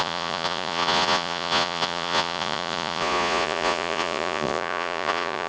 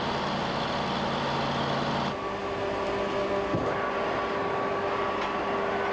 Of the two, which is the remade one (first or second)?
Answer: first